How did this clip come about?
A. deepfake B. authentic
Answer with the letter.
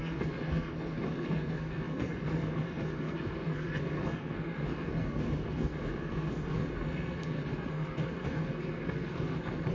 A